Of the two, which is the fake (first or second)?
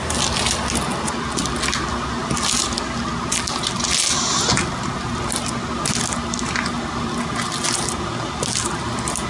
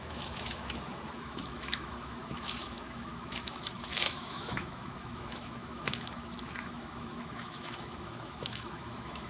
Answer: second